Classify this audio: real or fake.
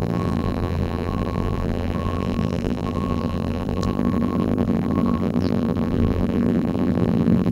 fake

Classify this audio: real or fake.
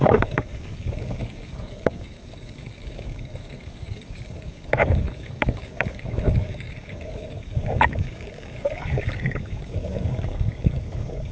fake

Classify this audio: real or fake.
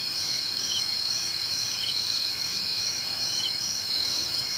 fake